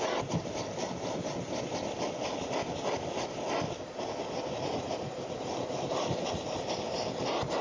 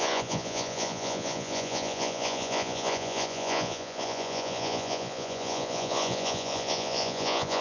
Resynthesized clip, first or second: second